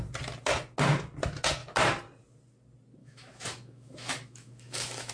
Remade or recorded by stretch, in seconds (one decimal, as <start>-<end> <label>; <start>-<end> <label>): 0.0-3.0 recorded; 3.0-5.1 remade

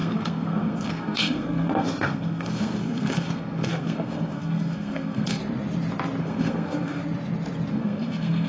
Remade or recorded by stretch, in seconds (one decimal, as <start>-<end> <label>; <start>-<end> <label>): 0.0-5.4 remade; 5.4-6.2 recorded; 6.2-7.0 remade; 7.0-7.7 recorded; 7.7-8.5 remade

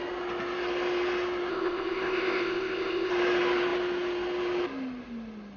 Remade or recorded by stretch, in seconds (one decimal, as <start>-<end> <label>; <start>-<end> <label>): 0.0-1.5 recorded; 1.5-3.1 remade; 3.1-5.6 recorded